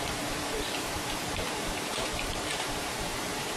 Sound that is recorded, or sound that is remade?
remade